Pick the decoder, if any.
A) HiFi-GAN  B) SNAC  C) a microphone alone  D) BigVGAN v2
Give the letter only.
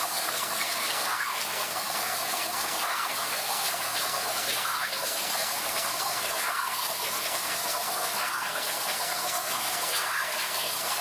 B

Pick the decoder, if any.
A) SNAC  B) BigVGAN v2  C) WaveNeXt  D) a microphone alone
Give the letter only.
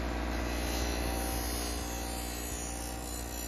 D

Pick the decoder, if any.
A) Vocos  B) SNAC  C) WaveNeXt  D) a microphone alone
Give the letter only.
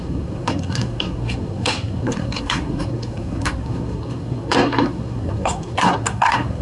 B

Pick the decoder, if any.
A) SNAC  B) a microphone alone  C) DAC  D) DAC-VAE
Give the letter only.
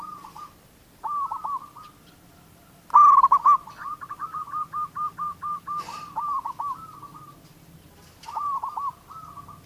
B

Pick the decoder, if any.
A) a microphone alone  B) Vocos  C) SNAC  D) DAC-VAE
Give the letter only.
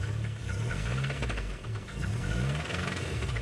C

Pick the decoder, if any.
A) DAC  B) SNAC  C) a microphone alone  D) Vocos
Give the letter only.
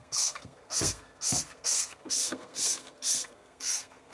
B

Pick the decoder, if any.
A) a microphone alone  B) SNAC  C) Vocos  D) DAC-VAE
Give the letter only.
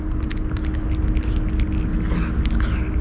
A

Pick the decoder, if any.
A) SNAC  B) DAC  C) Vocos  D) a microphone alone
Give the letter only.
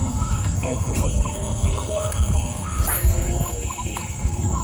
A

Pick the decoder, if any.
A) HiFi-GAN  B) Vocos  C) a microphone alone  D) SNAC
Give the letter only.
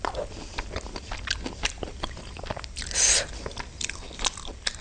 C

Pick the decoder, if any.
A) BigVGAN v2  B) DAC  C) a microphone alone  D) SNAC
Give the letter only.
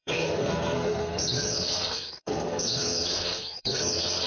D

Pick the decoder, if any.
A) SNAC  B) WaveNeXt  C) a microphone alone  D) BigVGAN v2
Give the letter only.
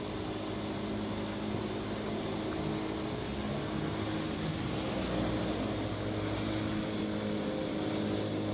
C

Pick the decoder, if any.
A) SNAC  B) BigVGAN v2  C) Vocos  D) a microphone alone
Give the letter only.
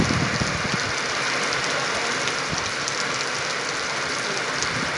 D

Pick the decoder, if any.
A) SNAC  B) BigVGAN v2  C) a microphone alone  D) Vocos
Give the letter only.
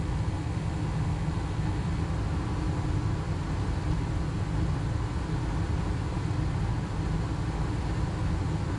C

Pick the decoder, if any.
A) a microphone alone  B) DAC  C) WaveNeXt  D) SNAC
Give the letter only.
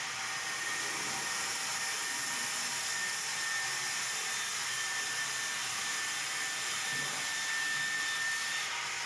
A